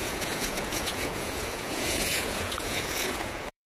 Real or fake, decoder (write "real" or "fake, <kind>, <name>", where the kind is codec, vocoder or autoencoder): fake, vocoder, Vocos